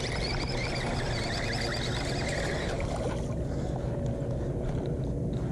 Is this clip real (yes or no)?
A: yes